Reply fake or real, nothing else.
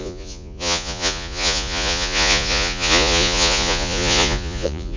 fake